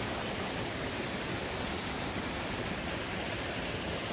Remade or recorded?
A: recorded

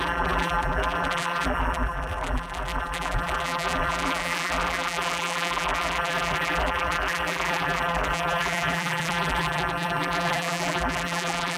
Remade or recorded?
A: remade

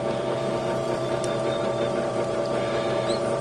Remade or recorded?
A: remade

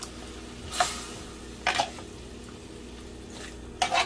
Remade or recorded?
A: recorded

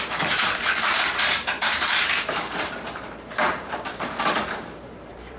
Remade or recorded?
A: remade